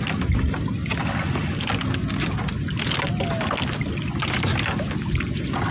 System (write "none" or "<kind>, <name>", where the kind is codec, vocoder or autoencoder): none